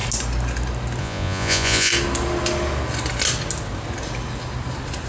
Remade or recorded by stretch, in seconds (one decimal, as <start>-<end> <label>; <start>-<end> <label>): 0.0-1.0 recorded; 1.0-1.9 remade; 1.9-5.1 recorded